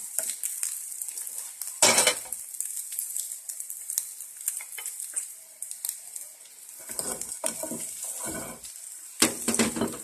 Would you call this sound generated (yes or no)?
no